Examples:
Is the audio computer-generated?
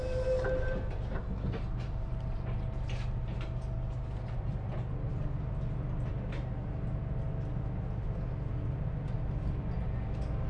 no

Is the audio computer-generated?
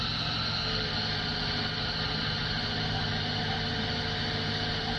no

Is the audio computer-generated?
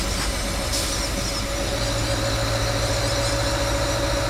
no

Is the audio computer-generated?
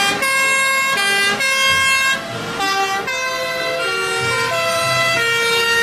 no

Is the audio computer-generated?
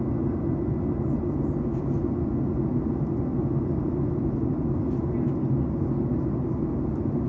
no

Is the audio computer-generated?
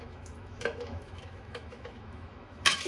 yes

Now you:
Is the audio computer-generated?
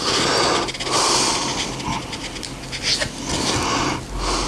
no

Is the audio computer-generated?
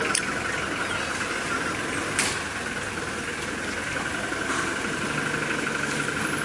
no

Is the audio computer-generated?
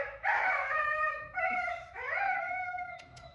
yes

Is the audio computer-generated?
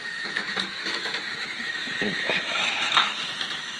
yes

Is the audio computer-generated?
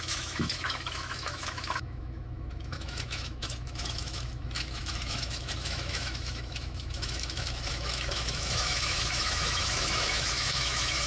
yes